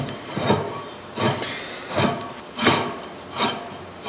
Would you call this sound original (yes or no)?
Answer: no